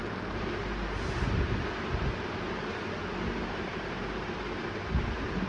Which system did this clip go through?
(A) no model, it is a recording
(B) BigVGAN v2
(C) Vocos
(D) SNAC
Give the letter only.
A